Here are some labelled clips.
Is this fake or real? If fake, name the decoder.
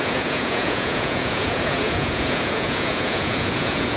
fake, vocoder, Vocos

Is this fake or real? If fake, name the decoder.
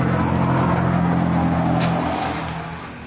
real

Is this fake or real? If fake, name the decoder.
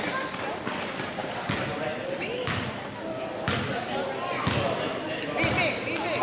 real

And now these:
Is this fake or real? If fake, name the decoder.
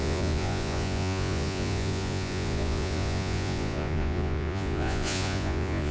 fake, vocoder, Vocos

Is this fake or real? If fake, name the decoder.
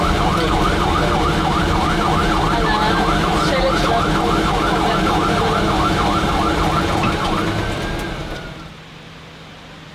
real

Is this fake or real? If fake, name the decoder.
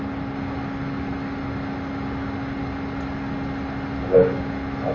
real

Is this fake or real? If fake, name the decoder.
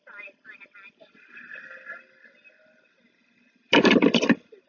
real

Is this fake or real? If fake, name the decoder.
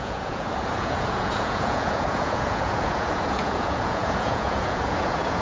fake, vocoder, Vocos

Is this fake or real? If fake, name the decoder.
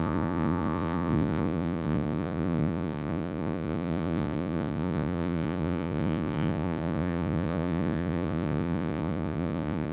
fake, vocoder, Vocos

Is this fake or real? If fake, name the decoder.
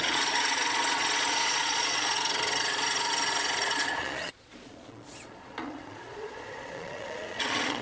fake, vocoder, Vocos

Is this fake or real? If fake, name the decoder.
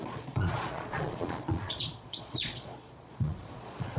fake, vocoder, Vocos